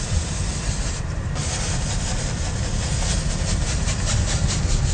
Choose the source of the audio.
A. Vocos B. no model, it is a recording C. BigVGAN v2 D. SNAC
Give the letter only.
B